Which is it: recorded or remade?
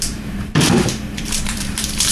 remade